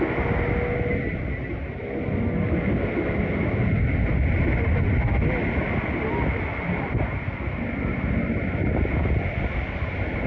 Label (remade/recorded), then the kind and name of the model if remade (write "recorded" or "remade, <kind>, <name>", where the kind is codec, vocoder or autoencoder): recorded